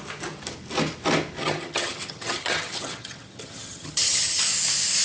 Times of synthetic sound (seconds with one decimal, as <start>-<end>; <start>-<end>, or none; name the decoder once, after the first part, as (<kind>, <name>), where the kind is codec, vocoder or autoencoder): 1.4-4.4 (vocoder, HiFi-GAN)